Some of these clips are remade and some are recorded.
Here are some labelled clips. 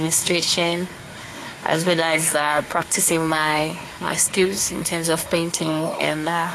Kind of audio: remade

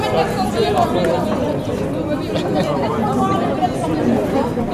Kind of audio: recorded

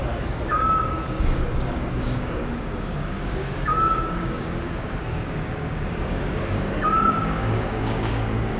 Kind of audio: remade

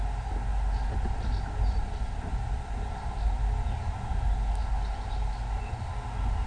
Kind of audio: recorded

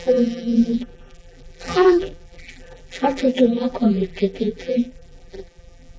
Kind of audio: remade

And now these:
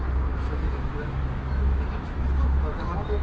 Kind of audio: remade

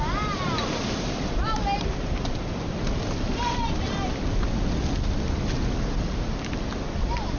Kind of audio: recorded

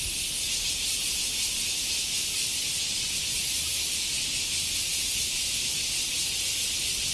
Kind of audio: recorded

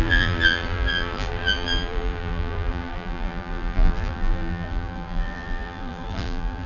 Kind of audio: remade